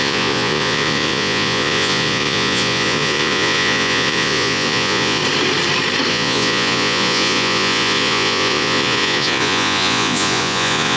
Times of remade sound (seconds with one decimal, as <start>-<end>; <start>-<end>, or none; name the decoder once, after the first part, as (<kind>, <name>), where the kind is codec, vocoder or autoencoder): 0.0-5.2 (vocoder, Vocos); 6.1-11.0